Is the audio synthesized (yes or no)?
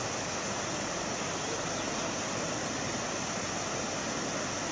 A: no